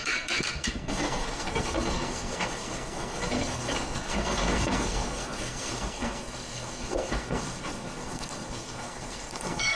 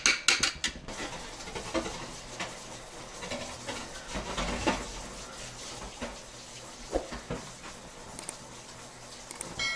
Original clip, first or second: second